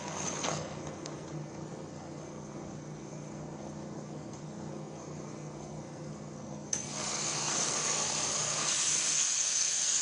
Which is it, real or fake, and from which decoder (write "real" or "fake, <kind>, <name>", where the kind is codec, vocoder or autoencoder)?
fake, codec, SNAC